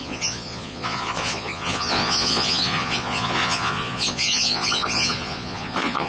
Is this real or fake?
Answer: fake